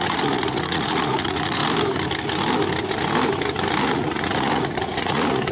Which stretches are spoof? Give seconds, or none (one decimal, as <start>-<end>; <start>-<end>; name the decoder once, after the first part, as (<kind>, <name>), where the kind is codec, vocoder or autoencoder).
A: 0.0-1.6 (vocoder, Vocos); 3.8-5.5